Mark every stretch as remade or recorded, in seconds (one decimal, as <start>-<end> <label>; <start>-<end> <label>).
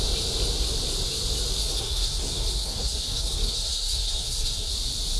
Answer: 0.0-1.6 recorded; 1.6-4.7 remade; 4.7-5.2 recorded